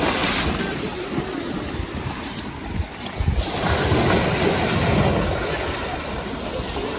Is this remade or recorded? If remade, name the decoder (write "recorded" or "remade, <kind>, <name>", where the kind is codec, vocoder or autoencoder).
recorded